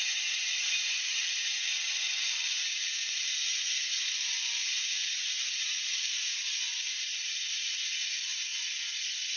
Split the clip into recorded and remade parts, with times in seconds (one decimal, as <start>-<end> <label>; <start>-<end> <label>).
0.0-6.4 remade; 6.4-7.2 recorded; 7.2-8.5 remade; 8.5-9.4 recorded